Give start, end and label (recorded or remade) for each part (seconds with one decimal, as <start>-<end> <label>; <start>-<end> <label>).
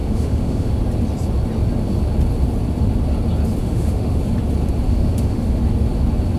0.0-0.8 remade; 0.8-3.6 recorded; 3.6-4.2 remade; 4.2-4.9 recorded; 4.9-5.6 remade; 5.6-6.4 recorded